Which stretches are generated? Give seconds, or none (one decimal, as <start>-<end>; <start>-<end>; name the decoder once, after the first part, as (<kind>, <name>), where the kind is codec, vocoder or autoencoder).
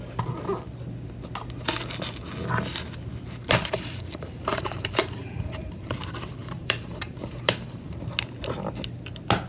3.4-8.0 (vocoder, BigVGAN v2)